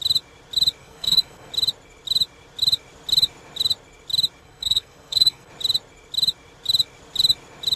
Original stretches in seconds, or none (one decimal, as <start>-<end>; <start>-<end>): 0.0-0.8; 1.5-4.4; 5.5-7.8